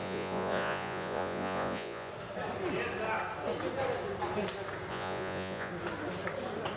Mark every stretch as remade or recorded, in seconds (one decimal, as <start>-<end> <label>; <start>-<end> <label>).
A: 0.0-2.1 remade; 2.1-4.9 recorded; 4.9-5.7 remade; 5.7-6.8 recorded